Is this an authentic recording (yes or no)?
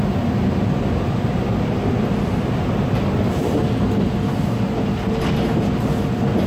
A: yes